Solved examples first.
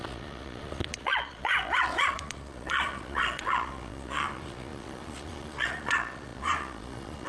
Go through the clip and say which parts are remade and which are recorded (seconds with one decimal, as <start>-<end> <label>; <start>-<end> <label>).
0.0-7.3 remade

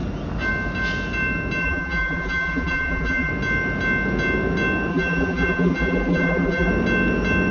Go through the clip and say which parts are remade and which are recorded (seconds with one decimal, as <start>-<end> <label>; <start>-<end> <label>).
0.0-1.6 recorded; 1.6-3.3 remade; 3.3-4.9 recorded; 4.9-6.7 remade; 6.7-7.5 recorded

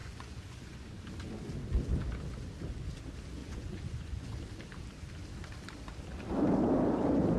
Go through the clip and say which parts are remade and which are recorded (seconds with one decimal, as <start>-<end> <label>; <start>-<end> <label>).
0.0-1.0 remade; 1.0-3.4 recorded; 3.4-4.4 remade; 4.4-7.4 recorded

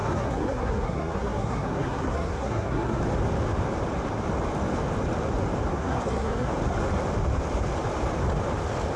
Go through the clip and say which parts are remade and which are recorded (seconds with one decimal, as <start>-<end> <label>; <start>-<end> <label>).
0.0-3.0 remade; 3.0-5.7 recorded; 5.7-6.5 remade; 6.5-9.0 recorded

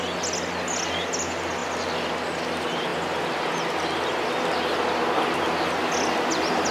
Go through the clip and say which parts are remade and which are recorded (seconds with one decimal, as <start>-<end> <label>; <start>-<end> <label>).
0.0-6.7 recorded

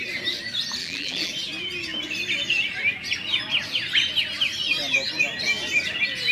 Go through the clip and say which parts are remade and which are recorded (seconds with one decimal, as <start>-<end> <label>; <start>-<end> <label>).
0.0-0.8 recorded; 0.8-1.3 remade; 1.3-6.3 recorded

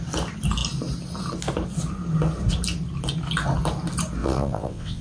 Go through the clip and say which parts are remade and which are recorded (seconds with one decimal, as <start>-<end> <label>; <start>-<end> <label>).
0.0-4.2 recorded; 4.2-5.0 remade

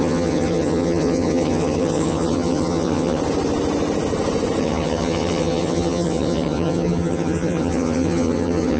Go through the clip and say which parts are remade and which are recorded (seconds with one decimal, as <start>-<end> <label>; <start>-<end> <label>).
0.0-3.2 remade; 3.2-4.6 recorded; 4.6-8.8 remade